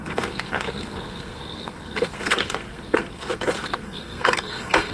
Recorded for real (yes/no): no